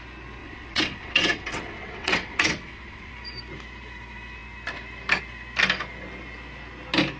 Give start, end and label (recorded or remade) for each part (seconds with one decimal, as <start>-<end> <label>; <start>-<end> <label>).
0.0-0.4 recorded; 0.4-3.1 remade; 3.1-7.2 recorded